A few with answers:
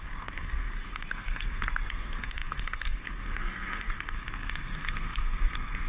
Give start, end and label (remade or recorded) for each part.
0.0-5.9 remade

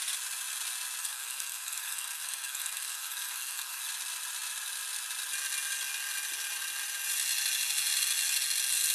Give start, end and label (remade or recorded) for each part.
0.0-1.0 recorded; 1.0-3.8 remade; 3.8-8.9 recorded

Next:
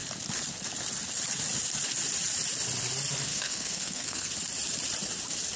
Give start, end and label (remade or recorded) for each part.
0.0-3.3 recorded; 3.3-4.3 remade; 4.3-5.6 recorded

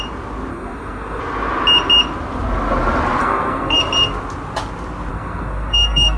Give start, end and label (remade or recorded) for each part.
0.0-0.5 recorded; 0.5-1.2 remade; 1.2-3.2 recorded; 3.2-3.8 remade; 3.8-5.1 recorded; 5.1-6.2 remade

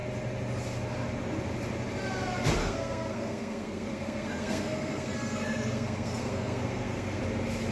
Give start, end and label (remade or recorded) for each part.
0.0-2.6 recorded; 2.6-7.2 remade; 7.2-7.7 recorded

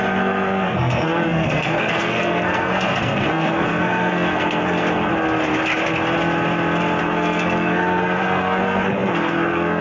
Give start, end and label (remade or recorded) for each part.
0.0-5.1 remade; 5.1-7.0 recorded; 7.0-9.8 remade